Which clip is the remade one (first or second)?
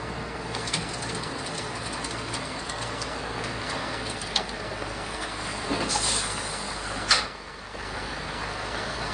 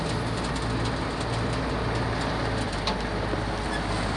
first